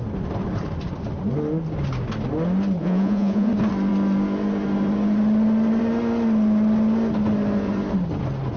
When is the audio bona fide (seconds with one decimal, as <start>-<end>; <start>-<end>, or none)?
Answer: 0.0-2.8; 3.5-8.6